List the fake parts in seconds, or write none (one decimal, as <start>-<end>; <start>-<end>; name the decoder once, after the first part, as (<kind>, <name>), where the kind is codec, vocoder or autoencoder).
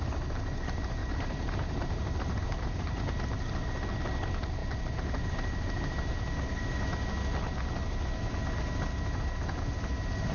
1.0-3.0 (vocoder, BigVGAN v2)